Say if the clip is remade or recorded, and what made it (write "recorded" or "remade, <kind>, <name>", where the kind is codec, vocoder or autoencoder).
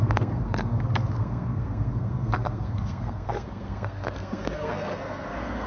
remade, codec, SNAC